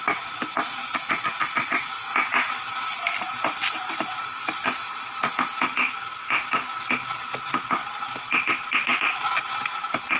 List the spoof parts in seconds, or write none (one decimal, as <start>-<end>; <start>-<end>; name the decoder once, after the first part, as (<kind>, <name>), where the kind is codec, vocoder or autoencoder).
8.9-9.5 (vocoder, BigVGAN v2)